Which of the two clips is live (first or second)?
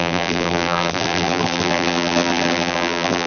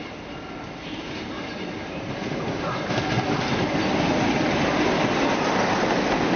second